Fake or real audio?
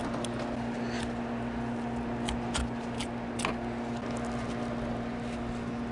real